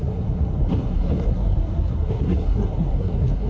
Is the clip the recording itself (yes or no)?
no